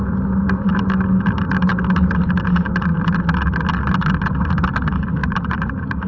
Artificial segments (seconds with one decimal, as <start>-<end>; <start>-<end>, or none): 5.2-6.1

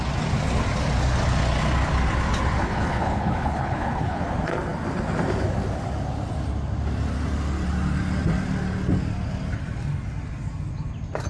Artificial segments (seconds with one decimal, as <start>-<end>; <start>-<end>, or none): 2.6-4.2

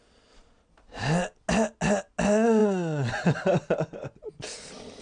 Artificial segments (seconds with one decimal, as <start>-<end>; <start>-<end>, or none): 2.6-4.3